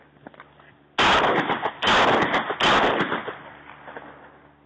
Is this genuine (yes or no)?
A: yes